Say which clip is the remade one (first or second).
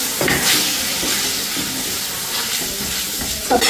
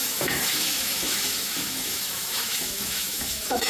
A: second